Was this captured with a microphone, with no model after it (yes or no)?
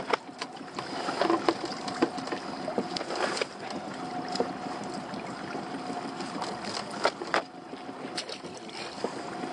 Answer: yes